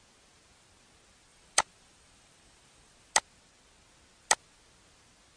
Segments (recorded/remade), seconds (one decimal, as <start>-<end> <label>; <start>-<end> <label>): 0.0-1.3 recorded; 1.3-3.1 remade; 3.1-5.4 recorded